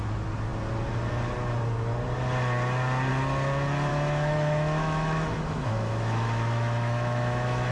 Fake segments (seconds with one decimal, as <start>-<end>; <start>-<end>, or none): 3.9-7.7